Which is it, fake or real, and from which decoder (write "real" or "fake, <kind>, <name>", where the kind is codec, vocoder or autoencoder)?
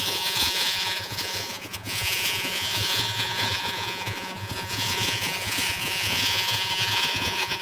fake, vocoder, Vocos